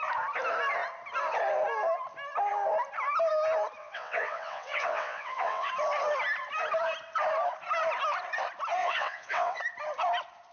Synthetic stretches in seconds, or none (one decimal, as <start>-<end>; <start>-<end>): 3.8-5.7; 8.8-9.6